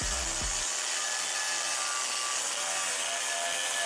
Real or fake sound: real